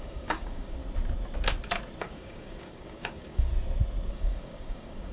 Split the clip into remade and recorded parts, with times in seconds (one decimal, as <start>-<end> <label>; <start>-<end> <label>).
0.0-0.8 remade; 0.8-2.0 recorded; 2.0-3.5 remade; 3.5-4.1 recorded; 4.1-5.1 remade

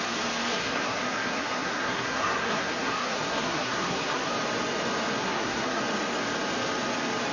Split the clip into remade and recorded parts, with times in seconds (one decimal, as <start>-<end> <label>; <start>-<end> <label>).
0.0-0.5 recorded; 0.5-4.3 remade; 4.3-5.2 recorded; 5.2-5.8 remade; 5.8-7.3 recorded